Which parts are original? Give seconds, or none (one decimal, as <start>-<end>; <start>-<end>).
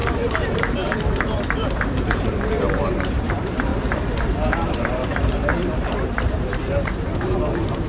3.7-4.2